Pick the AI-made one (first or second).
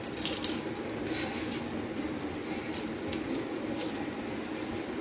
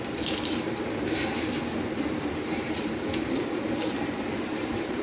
second